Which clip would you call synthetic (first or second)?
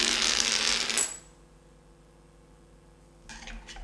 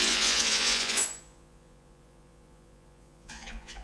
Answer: second